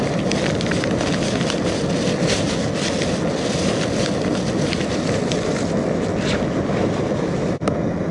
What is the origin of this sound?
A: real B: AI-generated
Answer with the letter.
A